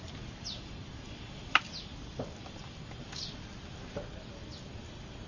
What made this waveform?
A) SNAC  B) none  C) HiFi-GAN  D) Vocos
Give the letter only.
B